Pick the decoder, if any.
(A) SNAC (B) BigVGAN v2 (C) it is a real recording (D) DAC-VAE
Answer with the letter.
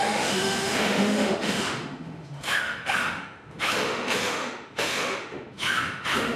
D